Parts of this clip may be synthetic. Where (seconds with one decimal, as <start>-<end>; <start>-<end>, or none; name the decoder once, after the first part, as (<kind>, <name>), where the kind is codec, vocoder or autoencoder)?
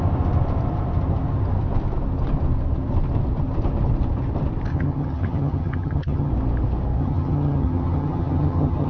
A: 4.7-6.3 (vocoder, HiFi-GAN); 7.0-8.9